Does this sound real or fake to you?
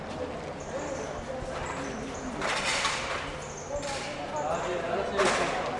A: real